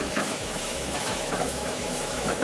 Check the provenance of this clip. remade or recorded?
remade